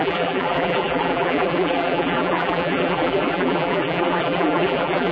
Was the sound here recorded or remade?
remade